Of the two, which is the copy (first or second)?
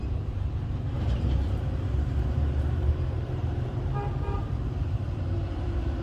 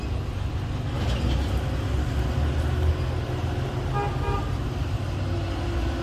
first